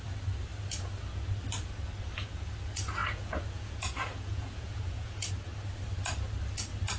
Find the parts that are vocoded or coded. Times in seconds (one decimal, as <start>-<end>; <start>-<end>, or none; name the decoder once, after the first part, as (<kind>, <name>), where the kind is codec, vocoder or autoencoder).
3.0-5.3 (vocoder, Vocos)